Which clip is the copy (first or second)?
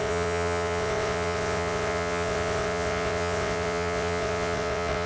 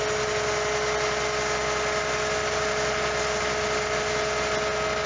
first